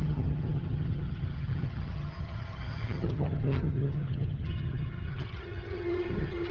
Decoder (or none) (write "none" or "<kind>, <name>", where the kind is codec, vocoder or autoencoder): vocoder, HiFi-GAN